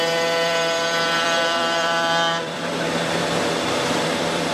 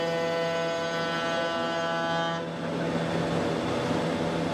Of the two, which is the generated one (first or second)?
first